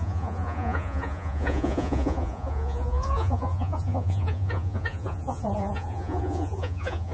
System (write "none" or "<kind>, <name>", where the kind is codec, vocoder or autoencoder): vocoder, Vocos